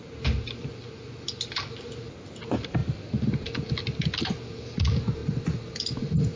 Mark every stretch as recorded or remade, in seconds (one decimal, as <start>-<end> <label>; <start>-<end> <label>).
0.0-6.4 recorded